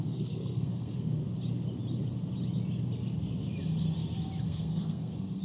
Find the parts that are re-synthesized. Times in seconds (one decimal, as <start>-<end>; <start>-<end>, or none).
0.0-1.2; 4.4-5.4